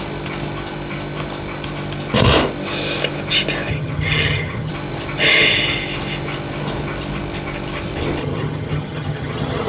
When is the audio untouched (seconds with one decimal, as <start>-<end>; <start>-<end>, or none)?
0.0-3.7; 4.7-8.2